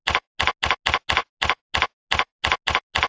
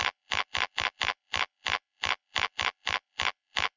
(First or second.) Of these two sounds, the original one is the first